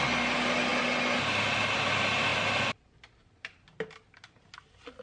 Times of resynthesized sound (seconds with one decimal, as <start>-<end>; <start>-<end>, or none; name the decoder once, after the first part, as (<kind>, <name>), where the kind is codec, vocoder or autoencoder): none